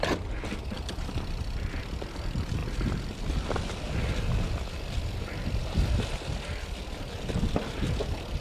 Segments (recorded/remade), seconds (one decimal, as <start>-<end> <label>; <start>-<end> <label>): 0.0-8.4 recorded